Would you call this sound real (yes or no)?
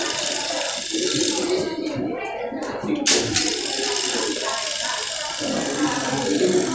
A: yes